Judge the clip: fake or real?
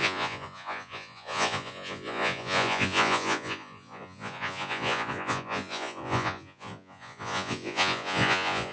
fake